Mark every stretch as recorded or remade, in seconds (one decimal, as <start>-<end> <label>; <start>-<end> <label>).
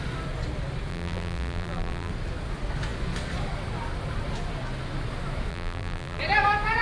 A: 0.0-0.9 recorded; 0.9-2.1 remade; 2.1-5.5 recorded; 5.5-6.2 remade; 6.2-6.8 recorded